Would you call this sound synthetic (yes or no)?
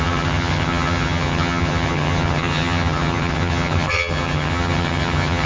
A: yes